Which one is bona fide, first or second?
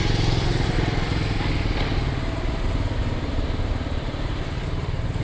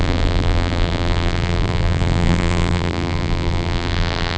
first